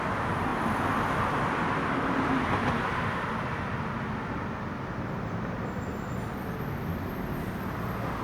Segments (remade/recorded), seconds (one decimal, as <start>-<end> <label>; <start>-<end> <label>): 0.0-8.2 recorded